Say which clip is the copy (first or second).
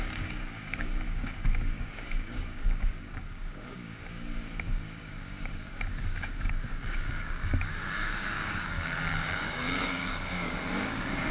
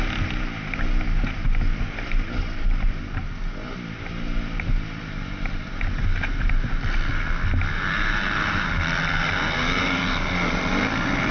first